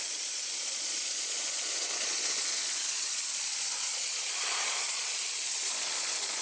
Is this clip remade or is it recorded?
remade